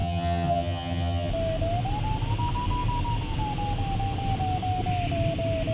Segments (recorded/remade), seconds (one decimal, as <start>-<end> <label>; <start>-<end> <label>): 0.0-1.3 remade; 1.3-5.7 recorded